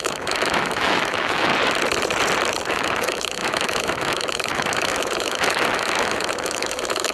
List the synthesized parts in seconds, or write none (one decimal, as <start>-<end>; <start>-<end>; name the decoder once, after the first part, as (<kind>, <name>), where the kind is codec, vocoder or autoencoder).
0.0-1.5 (autoencoder, DAC-VAE); 2.7-7.1